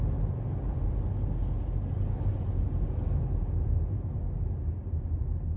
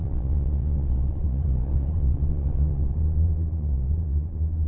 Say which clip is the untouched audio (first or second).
first